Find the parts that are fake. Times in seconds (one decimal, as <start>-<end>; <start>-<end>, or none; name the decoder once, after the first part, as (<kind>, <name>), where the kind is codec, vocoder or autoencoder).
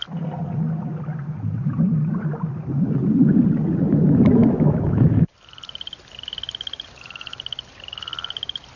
4.4-5.3 (autoencoder, DAC-VAE)